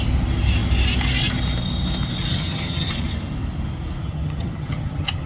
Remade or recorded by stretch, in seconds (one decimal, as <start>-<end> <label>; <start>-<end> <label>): 0.0-2.3 recorded; 2.3-2.9 remade; 2.9-4.0 recorded; 4.0-5.3 remade